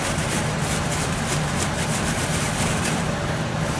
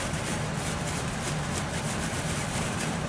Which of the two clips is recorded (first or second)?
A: first